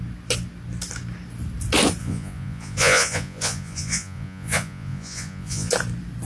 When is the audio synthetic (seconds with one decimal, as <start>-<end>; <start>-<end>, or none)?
2.0-5.7